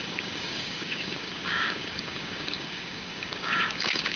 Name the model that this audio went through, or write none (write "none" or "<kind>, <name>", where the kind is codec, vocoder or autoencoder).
codec, DAC